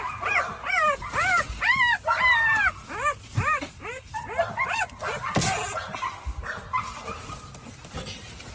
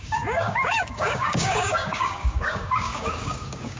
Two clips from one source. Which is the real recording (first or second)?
first